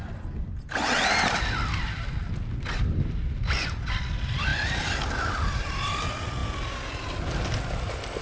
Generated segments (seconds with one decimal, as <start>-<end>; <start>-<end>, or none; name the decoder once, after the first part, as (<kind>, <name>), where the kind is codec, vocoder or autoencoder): none